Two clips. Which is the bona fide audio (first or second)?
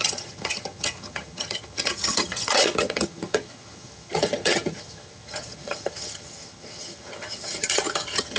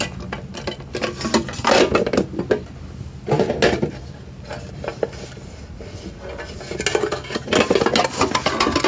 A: second